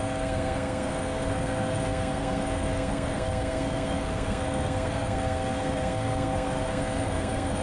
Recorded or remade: remade